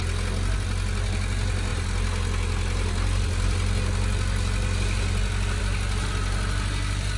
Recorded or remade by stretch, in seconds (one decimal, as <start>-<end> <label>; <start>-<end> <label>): 0.0-7.2 recorded